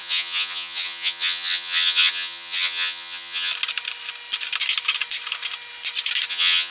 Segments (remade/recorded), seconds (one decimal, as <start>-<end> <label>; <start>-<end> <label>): 0.0-3.5 remade; 3.5-6.3 recorded; 6.3-6.7 remade

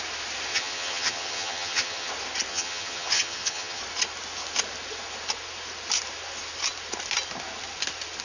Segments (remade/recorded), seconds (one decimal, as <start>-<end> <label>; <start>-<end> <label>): 0.0-0.5 recorded; 0.5-2.1 remade; 2.1-2.5 recorded; 2.5-3.8 remade; 3.8-8.2 recorded